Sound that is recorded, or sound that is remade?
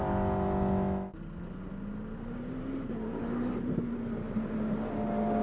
recorded